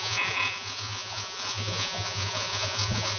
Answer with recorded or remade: remade